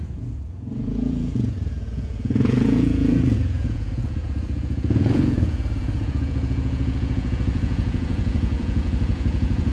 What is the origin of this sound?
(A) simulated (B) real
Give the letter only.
A